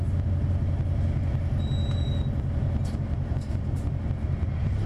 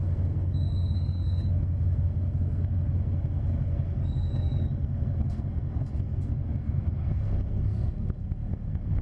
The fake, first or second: second